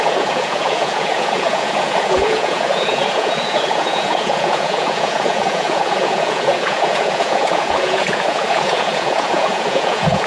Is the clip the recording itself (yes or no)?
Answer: no